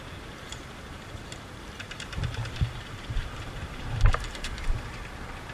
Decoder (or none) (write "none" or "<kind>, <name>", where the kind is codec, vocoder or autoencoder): vocoder, BigVGAN v2